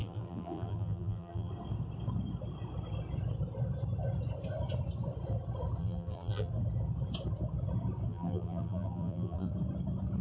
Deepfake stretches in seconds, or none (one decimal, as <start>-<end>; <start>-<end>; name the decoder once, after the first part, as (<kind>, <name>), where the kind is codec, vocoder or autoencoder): 0.0-1.5 (vocoder, BigVGAN v2); 5.8-6.5; 8.1-9.5